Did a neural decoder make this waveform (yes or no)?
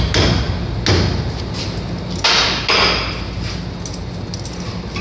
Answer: no